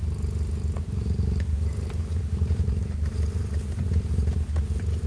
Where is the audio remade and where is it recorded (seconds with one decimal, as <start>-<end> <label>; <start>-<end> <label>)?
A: 0.0-0.8 recorded; 0.8-5.1 remade